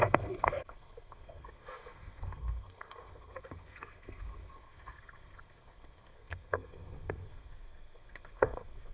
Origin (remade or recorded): remade